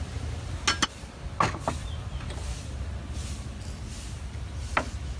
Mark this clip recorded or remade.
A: recorded